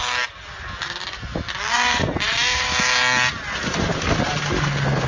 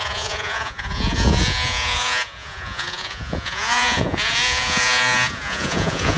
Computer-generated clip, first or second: second